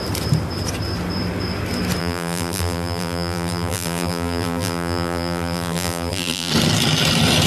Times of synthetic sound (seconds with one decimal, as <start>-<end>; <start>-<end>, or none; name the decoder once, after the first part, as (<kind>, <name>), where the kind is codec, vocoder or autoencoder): 2.0-6.5 (vocoder, BigVGAN v2)